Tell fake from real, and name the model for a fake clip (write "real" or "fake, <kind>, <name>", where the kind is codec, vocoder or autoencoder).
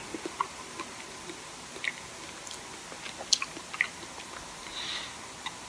real